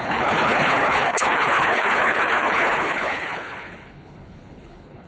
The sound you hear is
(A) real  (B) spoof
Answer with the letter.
B